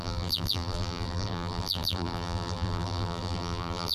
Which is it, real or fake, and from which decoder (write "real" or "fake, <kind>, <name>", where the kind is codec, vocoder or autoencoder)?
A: fake, vocoder, BigVGAN v2